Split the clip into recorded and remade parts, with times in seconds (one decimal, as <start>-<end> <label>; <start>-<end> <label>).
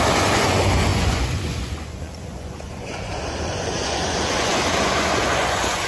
0.0-5.9 remade